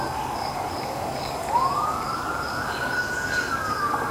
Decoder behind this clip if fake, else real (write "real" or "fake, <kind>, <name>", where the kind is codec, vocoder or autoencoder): fake, codec, DAC